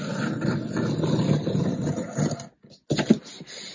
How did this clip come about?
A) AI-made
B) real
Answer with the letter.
B